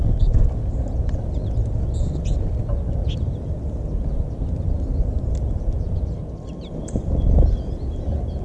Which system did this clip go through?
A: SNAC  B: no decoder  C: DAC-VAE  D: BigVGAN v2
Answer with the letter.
B